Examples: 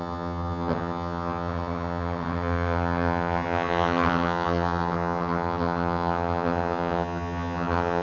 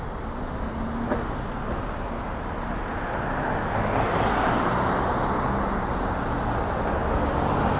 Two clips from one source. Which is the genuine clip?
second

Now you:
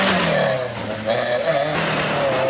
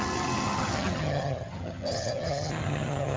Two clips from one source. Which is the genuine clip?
first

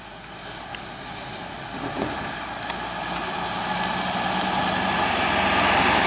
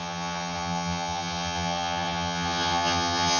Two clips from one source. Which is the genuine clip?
first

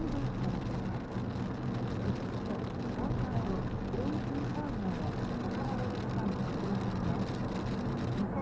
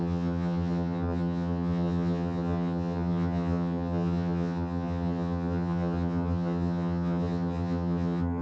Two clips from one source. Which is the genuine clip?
first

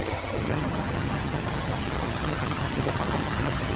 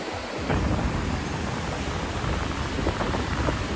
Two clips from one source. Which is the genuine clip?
second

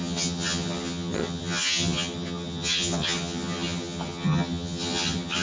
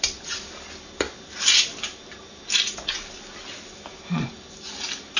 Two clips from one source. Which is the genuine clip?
second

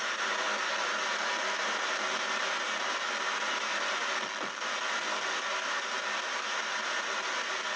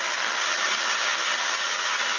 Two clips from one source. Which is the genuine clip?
first